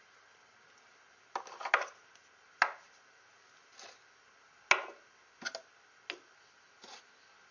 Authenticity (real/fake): real